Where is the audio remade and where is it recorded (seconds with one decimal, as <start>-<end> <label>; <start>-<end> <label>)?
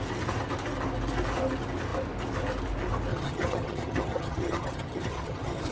0.0-3.1 recorded; 3.1-5.7 remade